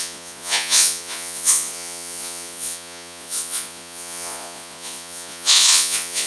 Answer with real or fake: fake